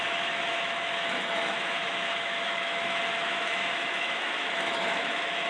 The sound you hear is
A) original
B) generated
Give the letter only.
B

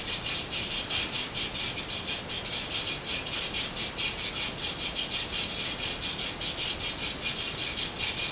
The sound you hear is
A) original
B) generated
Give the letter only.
A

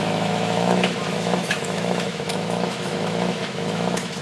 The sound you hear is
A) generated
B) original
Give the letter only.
A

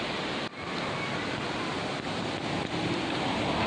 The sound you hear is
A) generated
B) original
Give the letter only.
B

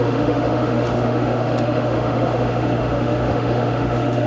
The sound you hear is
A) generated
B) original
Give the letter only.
A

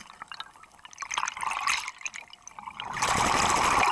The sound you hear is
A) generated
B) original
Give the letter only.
B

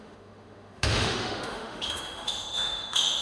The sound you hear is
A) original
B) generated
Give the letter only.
B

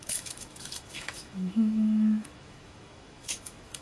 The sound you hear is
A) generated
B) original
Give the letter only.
A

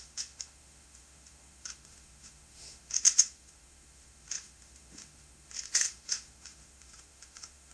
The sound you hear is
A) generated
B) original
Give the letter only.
A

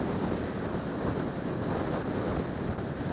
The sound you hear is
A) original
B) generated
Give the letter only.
A